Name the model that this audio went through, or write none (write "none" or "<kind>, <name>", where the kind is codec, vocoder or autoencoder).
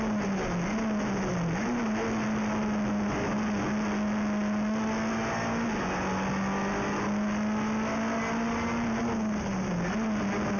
none